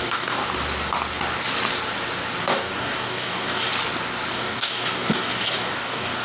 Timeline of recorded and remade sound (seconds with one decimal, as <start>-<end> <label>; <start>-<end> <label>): 0.0-0.4 remade; 0.4-2.4 recorded; 2.4-3.7 remade; 3.7-4.3 recorded; 4.3-6.2 remade